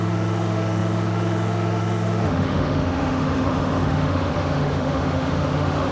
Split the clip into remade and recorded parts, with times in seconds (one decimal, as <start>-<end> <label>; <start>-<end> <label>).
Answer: 0.0-5.9 remade